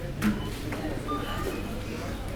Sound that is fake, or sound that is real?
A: real